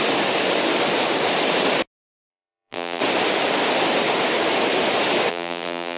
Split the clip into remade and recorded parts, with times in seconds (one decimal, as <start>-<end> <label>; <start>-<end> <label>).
0.0-2.3 recorded; 2.3-3.0 remade; 3.0-5.3 recorded; 5.3-6.0 remade